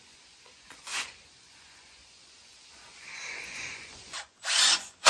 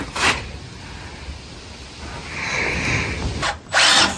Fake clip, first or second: first